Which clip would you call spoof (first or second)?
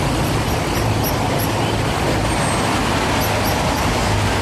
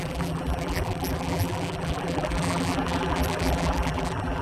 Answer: second